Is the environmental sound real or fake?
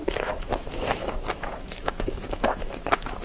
fake